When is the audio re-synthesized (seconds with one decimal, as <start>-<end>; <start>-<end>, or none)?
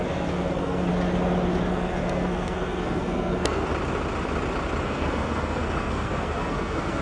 0.0-0.9; 1.7-3.7; 4.8-7.0